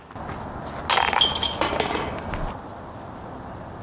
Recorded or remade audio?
recorded